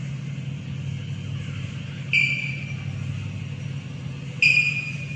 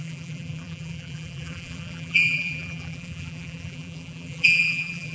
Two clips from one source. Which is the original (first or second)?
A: first